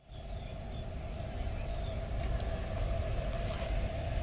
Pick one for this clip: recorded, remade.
recorded